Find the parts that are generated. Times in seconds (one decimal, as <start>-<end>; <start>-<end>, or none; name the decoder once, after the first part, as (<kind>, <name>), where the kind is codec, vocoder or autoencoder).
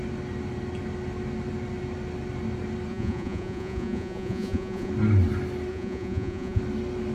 2.9-4.9 (vocoder, Vocos); 5.7-6.6